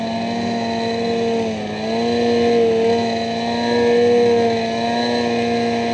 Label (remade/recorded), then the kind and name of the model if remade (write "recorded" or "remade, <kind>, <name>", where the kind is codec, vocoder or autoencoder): recorded